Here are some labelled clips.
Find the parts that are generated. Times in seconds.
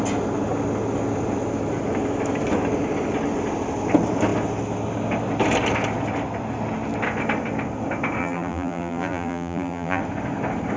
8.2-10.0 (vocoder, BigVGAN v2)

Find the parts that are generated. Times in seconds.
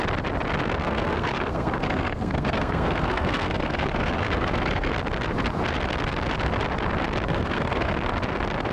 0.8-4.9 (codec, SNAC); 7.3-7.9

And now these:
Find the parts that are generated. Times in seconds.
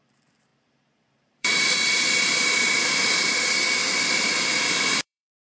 0.0-5.5 (vocoder, BigVGAN v2)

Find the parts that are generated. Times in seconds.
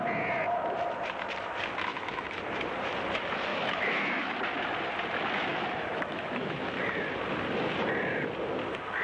1.9-2.4 (autoencoder, DAC-VAE); 3.5-4.4; 5.5-6.8